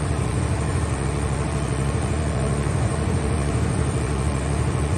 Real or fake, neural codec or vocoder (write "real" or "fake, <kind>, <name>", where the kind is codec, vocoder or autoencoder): fake, vocoder, Vocos